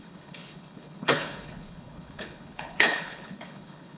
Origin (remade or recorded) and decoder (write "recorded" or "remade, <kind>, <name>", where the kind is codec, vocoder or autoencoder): remade, codec, HILCodec